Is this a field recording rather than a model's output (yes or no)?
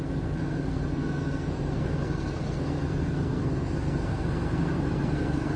no